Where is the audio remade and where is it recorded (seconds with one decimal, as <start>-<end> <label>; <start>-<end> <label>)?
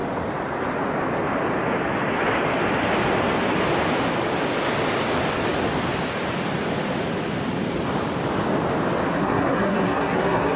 0.0-9.1 recorded; 9.1-10.6 remade